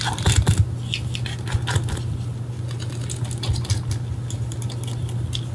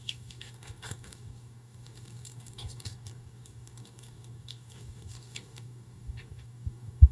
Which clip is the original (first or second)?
first